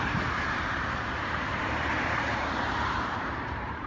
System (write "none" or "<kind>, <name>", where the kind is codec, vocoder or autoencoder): vocoder, BigVGAN v2